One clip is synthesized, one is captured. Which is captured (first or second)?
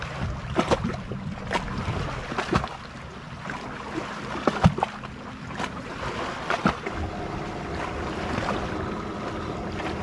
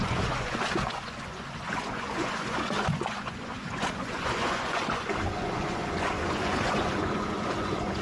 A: first